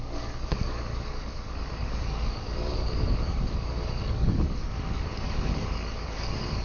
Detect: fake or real fake